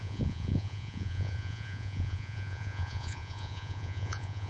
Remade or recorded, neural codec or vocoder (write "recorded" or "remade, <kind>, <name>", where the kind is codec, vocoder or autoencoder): remade, vocoder, Vocos